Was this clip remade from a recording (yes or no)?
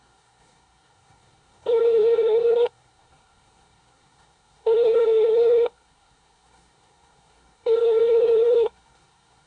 yes